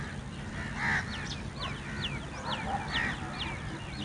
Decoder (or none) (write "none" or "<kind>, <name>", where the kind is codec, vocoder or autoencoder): none